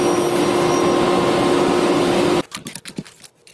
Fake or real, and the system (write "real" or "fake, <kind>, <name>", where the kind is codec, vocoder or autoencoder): real